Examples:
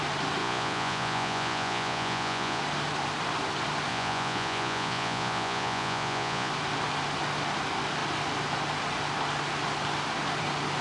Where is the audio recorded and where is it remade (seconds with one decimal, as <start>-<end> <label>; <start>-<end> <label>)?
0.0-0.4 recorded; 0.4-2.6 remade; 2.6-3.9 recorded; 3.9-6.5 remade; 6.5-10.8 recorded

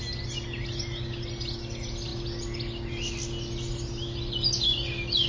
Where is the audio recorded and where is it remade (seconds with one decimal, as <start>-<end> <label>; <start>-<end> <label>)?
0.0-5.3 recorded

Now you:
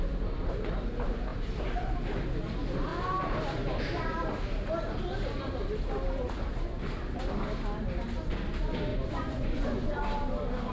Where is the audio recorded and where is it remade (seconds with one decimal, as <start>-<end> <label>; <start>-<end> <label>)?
0.0-8.9 recorded; 8.9-10.0 remade; 10.0-10.7 recorded

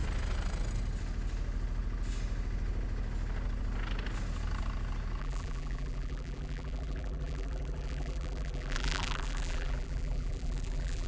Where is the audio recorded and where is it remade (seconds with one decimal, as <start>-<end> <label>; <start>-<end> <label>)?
0.0-5.2 recorded; 5.2-11.1 remade

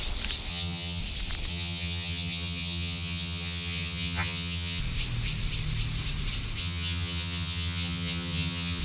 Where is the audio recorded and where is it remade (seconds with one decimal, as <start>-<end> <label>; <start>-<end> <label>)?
0.0-0.5 recorded; 0.5-1.0 remade; 1.0-1.5 recorded; 1.5-4.8 remade; 4.8-6.6 recorded; 6.6-8.8 remade